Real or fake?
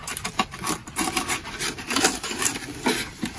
fake